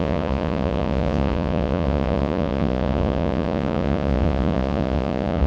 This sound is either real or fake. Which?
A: fake